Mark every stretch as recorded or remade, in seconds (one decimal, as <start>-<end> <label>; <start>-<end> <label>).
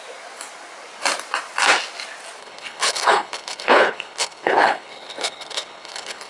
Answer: 0.0-2.4 recorded; 2.4-6.3 remade